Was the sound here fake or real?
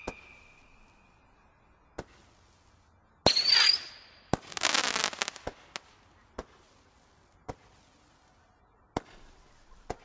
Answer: real